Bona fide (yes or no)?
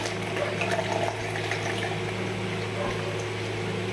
yes